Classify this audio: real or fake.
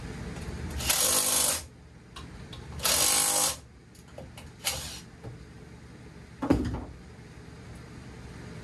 real